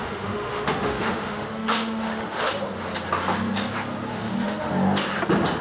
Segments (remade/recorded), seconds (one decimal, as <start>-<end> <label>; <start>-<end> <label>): 0.0-2.5 remade; 2.5-4.1 recorded; 4.1-4.7 remade; 4.7-5.6 recorded

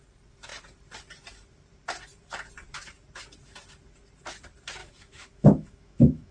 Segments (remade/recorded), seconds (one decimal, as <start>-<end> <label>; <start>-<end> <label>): 0.0-4.8 recorded; 4.8-6.3 remade

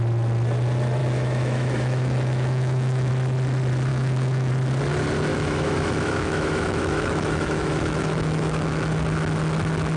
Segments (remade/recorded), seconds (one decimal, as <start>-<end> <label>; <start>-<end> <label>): 0.0-1.0 recorded; 1.0-3.1 remade; 3.1-3.9 recorded; 3.9-4.5 remade; 4.5-5.3 recorded; 5.3-8.9 remade; 8.9-10.0 recorded

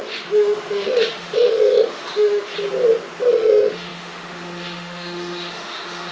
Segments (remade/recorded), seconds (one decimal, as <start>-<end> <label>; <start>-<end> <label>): 0.0-2.5 remade; 2.5-3.2 recorded; 3.2-6.1 remade

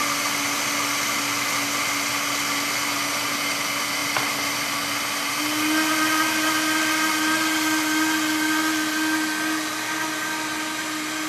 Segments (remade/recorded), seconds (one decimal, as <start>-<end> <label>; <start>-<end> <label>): 0.0-11.3 recorded

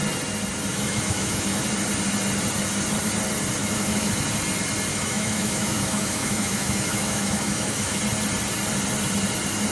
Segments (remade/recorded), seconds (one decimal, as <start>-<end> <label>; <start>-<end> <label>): 0.0-0.7 recorded; 0.7-1.6 remade; 1.6-3.6 recorded; 3.6-4.1 remade; 4.1-4.9 recorded; 4.9-8.0 remade; 8.0-9.7 recorded